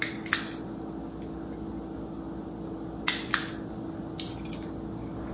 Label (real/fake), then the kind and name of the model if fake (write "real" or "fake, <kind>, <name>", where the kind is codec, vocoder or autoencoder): real